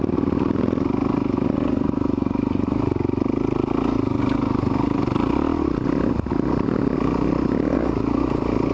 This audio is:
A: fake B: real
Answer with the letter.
B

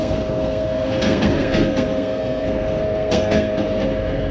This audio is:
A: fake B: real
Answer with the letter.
A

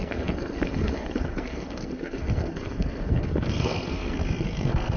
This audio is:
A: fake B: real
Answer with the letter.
A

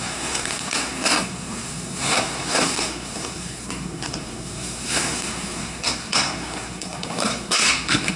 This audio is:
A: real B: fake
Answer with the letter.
B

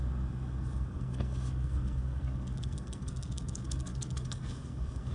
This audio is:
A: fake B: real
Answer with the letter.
A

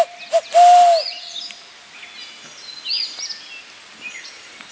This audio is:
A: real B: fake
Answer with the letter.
A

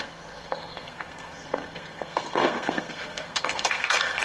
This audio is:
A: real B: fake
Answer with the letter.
B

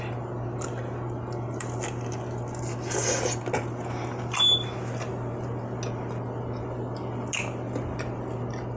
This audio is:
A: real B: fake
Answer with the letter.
A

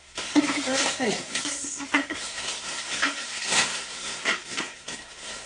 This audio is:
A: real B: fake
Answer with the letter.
B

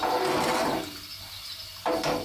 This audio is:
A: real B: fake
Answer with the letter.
A